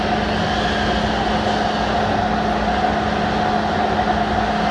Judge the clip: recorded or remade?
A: recorded